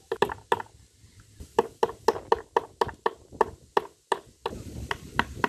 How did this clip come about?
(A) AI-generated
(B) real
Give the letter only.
B